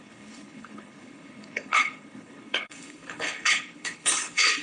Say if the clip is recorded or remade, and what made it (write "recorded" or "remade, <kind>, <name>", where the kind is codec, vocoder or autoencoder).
remade, codec, HILCodec